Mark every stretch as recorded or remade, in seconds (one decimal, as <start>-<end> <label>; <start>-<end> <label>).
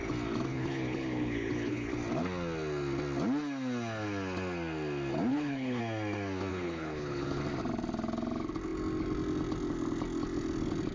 0.0-0.5 recorded; 0.5-1.9 remade; 1.9-5.3 recorded; 5.3-5.8 remade; 5.8-6.5 recorded; 6.5-7.4 remade; 7.4-10.9 recorded